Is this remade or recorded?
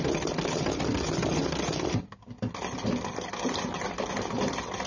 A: recorded